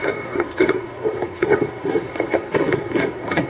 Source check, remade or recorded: remade